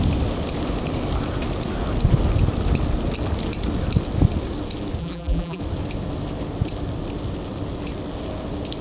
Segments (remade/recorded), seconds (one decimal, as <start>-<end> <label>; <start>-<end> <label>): 0.0-5.0 recorded; 5.0-5.6 remade; 5.6-8.8 recorded